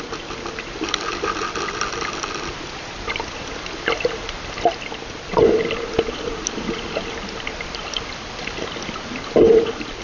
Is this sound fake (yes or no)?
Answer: no